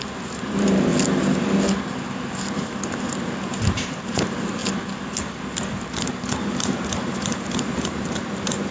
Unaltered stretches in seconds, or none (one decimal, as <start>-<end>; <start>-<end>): 0.9-3.6; 4.6-5.7